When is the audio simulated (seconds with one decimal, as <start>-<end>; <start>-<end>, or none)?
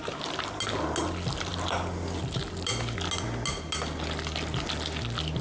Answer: none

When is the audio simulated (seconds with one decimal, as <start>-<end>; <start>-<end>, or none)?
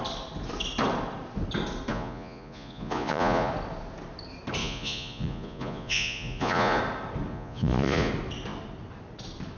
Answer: 1.9-3.5; 4.6-6.8; 7.3-8.1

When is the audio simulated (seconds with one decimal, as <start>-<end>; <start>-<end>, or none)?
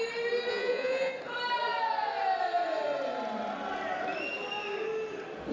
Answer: 0.5-1.1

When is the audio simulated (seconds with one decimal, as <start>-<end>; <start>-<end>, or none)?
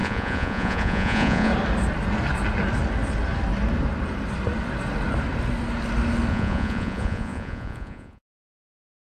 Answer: 0.0-1.5; 6.3-9.1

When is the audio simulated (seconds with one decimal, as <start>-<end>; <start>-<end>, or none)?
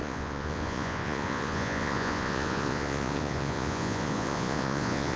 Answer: 0.0-5.2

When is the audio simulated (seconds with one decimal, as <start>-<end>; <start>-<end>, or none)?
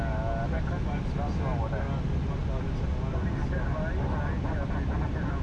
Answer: none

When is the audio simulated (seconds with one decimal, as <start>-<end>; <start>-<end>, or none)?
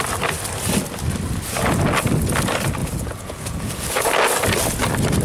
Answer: 2.8-4.1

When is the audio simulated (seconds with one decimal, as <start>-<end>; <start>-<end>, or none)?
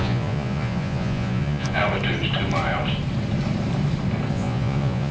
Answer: 0.0-1.8; 4.3-5.1